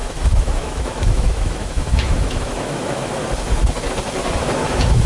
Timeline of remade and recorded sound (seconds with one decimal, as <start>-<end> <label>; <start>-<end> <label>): 0.0-3.1 remade; 3.1-5.1 recorded